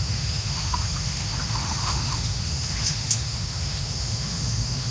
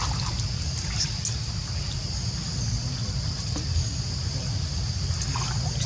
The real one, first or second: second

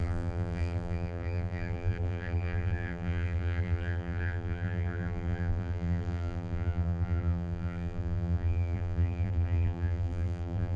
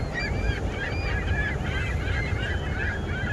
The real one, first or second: second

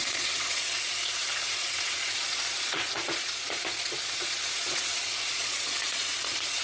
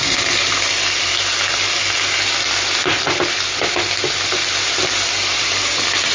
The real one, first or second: second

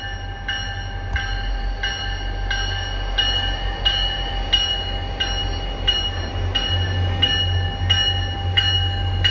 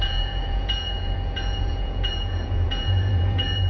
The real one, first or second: first